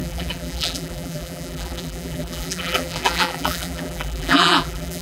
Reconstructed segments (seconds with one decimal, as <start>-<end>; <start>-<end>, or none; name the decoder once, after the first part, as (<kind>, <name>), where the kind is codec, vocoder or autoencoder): 0.0-5.0 (vocoder, BigVGAN v2)